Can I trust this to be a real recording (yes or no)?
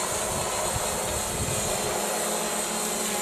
yes